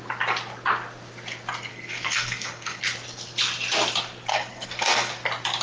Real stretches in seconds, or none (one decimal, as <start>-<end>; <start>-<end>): 0.0-1.7; 2.8-4.3; 5.1-5.6